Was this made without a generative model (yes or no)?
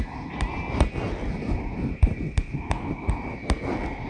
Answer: yes